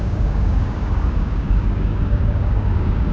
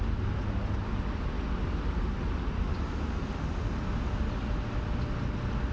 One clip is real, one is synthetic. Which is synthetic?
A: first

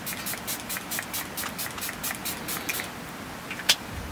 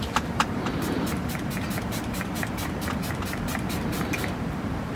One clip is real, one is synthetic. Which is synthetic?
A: second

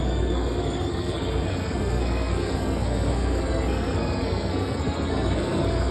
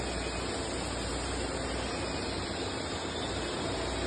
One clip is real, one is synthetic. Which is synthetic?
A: first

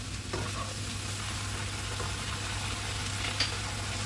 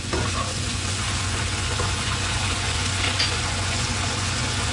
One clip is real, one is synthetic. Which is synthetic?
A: second